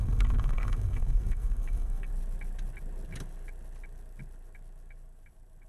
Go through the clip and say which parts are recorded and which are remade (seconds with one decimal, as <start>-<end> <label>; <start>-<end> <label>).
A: 0.0-2.1 remade; 2.1-5.7 recorded